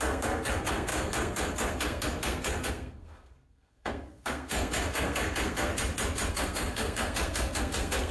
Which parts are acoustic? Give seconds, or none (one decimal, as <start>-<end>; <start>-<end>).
5.7-6.3